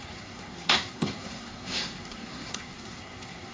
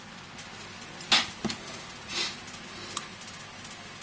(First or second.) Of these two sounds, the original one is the second